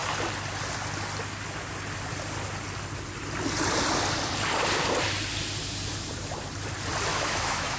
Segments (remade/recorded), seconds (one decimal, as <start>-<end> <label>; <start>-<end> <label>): 0.0-7.1 recorded; 7.1-7.8 remade